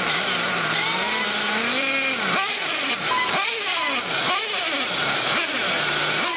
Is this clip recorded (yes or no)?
yes